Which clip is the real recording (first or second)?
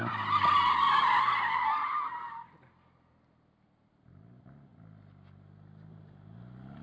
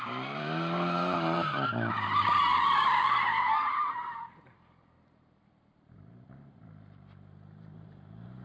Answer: first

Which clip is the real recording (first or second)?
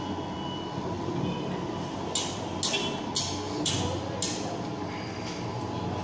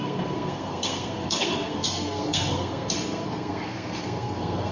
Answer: first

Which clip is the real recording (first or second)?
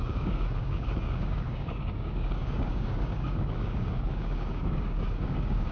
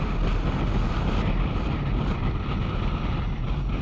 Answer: second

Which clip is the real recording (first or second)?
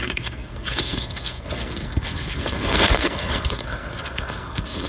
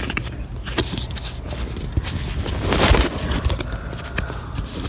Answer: second